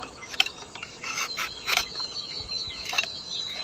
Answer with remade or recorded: remade